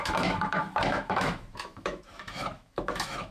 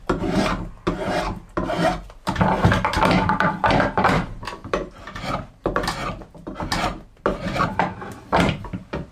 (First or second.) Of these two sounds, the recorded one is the second